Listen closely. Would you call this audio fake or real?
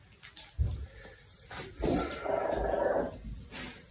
real